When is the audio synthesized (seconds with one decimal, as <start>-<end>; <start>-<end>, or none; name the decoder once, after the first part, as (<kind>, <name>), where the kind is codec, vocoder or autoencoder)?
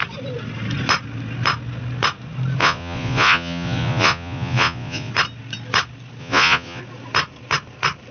2.6-5.1 (vocoder, Vocos); 6.2-6.8